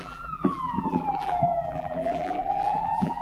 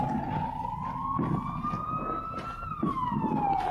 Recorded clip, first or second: second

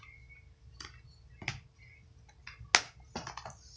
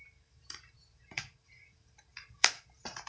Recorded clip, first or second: first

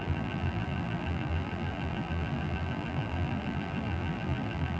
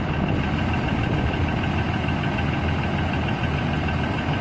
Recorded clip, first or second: second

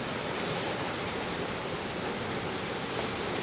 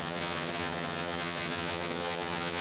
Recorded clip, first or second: first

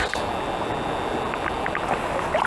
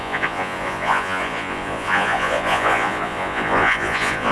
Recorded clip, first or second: first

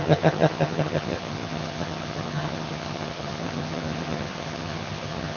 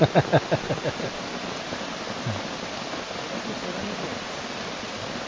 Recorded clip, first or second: second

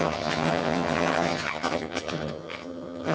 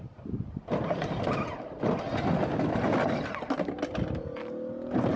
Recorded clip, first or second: second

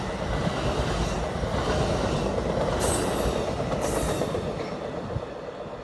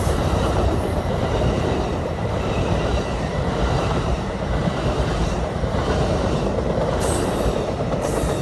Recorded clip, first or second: first